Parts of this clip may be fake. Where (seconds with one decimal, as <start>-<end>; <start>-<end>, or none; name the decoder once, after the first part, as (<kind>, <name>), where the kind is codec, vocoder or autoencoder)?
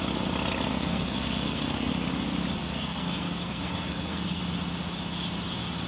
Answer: 0.7-1.9 (codec, SNAC); 2.6-4.4